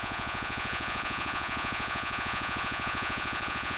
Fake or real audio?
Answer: fake